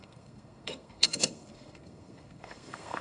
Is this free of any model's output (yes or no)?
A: no